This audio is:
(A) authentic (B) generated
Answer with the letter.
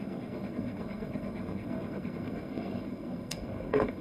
B